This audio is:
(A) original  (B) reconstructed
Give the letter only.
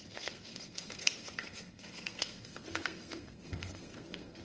B